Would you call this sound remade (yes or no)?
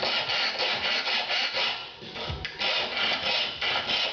no